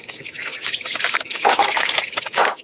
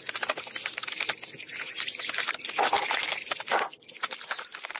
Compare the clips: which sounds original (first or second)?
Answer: second